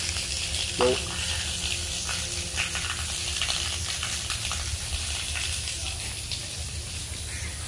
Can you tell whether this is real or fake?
real